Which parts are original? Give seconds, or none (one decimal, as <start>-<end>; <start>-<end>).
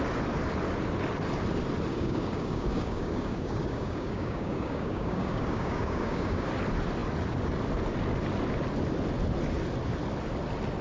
0.0-1.9; 6.5-10.8